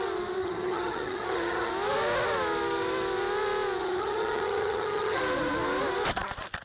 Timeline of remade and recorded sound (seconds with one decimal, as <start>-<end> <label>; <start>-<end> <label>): 0.0-0.4 recorded; 0.4-1.7 remade; 1.7-3.8 recorded; 3.8-5.2 remade; 5.2-6.6 recorded